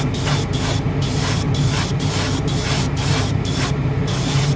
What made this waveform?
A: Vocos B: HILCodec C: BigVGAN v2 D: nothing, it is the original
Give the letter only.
D